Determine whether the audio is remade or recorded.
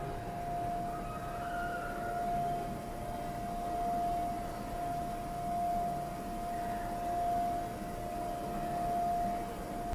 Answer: recorded